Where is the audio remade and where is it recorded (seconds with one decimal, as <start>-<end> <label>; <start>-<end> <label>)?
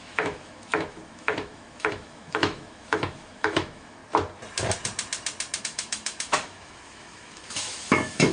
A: 0.0-4.0 remade; 4.0-5.6 recorded; 5.6-8.3 remade